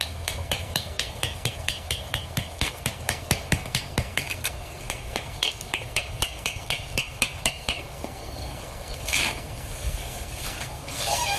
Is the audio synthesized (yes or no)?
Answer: yes